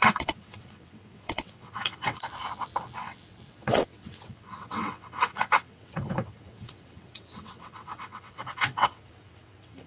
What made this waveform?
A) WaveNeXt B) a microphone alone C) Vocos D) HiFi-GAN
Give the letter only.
A